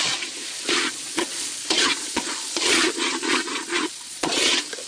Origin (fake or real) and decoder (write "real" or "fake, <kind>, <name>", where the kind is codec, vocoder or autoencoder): fake, vocoder, Vocos